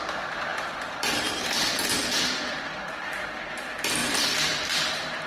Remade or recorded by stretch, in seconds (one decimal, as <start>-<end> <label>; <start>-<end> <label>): 0.0-5.3 remade